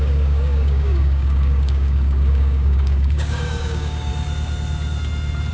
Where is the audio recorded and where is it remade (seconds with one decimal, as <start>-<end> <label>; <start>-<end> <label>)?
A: 0.0-4.1 remade; 4.1-5.5 recorded